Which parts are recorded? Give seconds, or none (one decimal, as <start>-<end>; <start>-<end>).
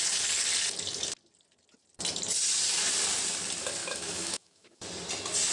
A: 0.0-3.8; 4.8-5.5